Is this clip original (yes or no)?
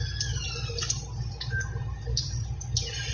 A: yes